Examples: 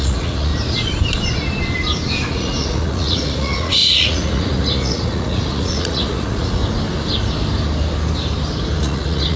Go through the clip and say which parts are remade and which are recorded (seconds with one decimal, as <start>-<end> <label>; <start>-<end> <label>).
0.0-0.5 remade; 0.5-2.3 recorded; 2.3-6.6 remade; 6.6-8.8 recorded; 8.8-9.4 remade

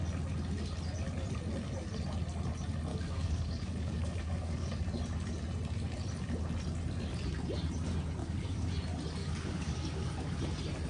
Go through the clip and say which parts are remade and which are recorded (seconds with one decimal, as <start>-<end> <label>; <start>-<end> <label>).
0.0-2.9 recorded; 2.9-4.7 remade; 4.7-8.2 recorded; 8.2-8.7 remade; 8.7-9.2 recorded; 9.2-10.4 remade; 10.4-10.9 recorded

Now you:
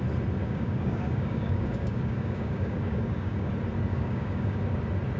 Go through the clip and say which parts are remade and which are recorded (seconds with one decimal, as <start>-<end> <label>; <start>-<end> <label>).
0.0-0.4 recorded; 0.4-3.5 remade; 3.5-3.9 recorded; 3.9-4.6 remade; 4.6-5.2 recorded

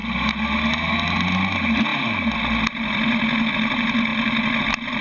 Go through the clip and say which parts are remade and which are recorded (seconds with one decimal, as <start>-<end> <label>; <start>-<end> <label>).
0.0-5.0 recorded